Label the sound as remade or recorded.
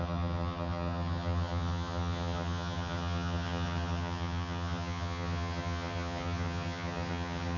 remade